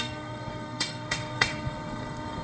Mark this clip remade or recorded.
remade